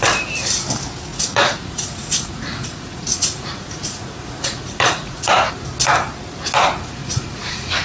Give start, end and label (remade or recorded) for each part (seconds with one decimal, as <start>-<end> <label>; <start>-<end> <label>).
0.0-1.1 recorded; 1.1-5.5 remade; 5.5-7.0 recorded; 7.0-7.8 remade